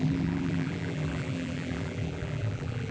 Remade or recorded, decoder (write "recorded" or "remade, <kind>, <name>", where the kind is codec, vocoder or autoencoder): remade, vocoder, BigVGAN v2